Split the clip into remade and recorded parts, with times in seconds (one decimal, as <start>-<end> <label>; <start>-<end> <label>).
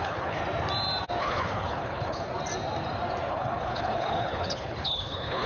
0.0-0.4 remade; 0.4-1.2 recorded; 1.2-2.3 remade; 2.3-3.3 recorded; 3.3-5.5 remade